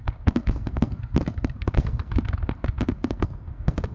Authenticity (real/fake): fake